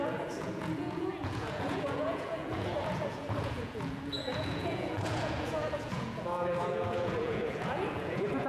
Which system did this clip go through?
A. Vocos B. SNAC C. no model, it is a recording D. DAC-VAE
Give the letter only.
A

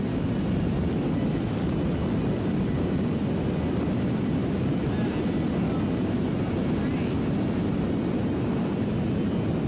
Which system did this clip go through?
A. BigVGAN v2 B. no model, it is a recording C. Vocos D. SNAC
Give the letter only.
B